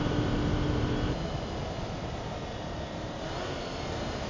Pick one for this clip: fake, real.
real